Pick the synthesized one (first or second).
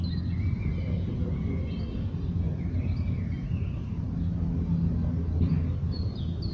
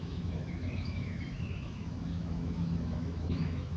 second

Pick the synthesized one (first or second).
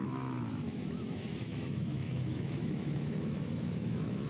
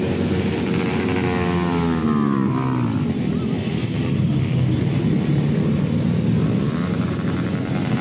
first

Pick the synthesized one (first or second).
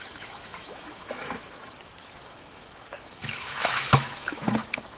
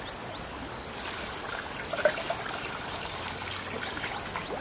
first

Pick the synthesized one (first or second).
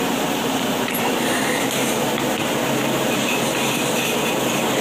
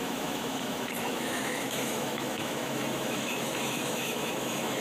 second